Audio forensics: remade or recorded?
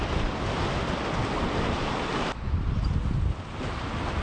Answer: recorded